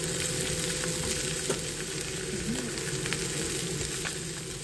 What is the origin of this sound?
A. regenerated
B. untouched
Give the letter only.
B